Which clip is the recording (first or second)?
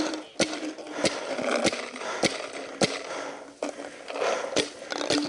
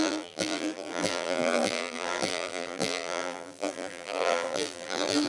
first